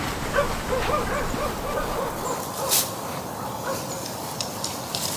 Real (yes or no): yes